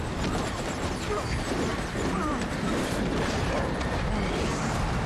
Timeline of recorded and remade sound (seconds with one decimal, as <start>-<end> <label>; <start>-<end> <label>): 0.0-1.7 recorded; 1.7-5.1 remade